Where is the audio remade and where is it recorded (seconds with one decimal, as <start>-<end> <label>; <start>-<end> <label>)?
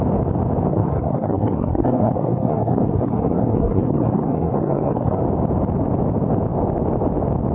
0.0-0.7 recorded; 0.7-5.2 remade; 5.2-7.5 recorded